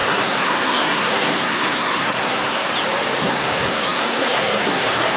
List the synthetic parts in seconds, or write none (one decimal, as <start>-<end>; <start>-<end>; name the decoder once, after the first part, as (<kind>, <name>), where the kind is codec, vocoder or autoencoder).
0.0-2.7 (codec, SNAC); 3.2-5.2